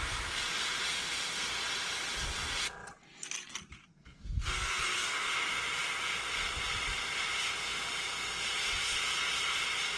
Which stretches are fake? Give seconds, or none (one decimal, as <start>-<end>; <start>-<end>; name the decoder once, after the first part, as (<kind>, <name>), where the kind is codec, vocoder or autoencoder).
3.9-5.3 (codec, SNAC)